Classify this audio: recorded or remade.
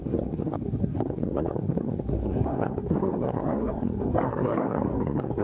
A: remade